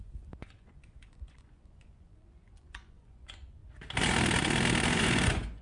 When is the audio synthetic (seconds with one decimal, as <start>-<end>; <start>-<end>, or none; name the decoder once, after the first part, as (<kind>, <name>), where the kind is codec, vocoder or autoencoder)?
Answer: 0.0-3.6 (vocoder, Vocos); 4.9-5.6